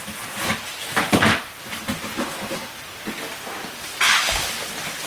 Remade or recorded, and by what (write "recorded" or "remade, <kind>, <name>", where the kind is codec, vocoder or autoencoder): recorded